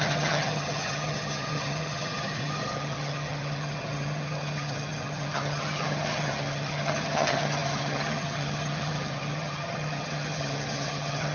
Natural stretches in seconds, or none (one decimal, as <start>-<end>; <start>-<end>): none